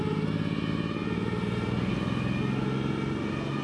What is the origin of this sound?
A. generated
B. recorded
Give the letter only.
B